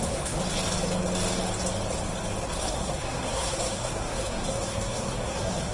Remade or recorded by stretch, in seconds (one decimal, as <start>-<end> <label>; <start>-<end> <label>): 0.0-0.4 remade; 0.4-2.7 recorded; 2.7-5.7 remade